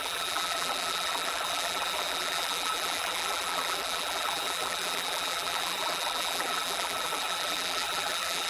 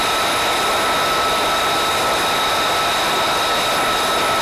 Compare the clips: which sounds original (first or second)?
second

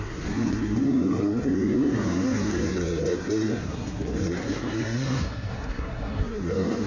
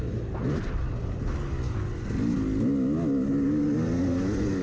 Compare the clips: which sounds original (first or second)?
second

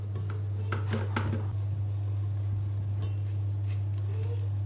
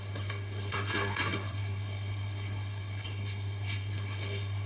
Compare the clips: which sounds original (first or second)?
first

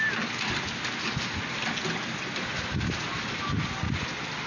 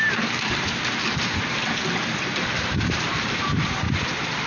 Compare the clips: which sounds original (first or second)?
first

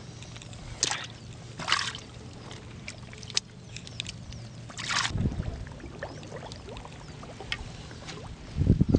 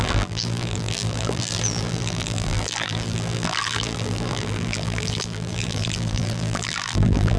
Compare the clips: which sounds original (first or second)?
first